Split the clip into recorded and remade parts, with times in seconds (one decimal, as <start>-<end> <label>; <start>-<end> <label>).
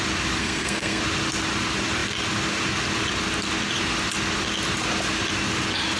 0.0-0.4 recorded; 0.4-1.0 remade; 1.0-6.0 recorded